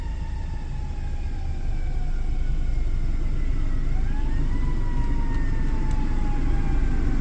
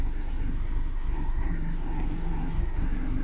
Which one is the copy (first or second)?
second